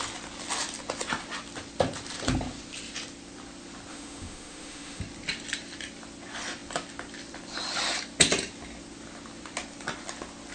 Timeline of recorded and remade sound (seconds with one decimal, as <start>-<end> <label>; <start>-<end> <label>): 0.0-3.9 recorded; 3.9-5.0 remade; 5.0-10.5 recorded